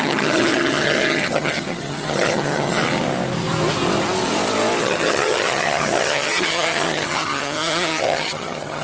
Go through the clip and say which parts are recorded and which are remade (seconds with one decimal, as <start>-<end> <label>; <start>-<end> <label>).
0.0-2.8 remade; 2.8-4.8 recorded; 4.8-8.8 remade